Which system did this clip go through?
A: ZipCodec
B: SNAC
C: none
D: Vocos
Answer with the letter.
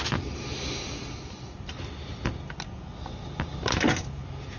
C